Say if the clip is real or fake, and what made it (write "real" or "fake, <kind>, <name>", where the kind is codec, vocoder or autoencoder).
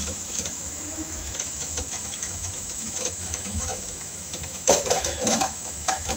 fake, autoencoder, DAC-VAE